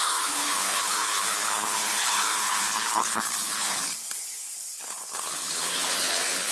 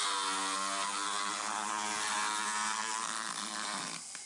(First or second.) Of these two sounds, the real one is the second